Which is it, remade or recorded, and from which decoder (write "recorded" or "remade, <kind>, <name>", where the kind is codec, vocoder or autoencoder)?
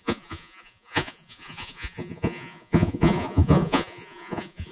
remade, vocoder, Vocos